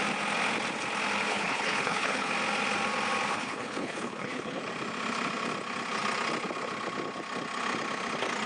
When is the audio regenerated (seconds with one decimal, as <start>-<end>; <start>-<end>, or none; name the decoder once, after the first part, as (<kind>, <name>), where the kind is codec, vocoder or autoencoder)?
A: 1.3-2.3 (codec, HILCodec); 3.3-4.6